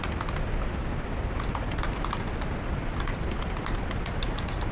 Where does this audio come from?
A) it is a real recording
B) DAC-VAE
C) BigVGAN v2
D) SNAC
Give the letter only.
A